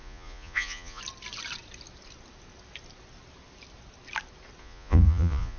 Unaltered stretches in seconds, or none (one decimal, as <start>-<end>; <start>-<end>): 1.0-4.6